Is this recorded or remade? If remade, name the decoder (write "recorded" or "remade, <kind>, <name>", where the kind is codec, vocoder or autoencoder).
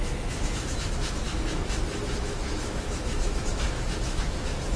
remade, autoencoder, DAC-VAE